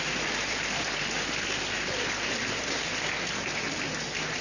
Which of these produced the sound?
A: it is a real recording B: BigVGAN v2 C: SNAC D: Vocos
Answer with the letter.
A